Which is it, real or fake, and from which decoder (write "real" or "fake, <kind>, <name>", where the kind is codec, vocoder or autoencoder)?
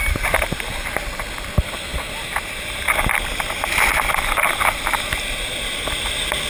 real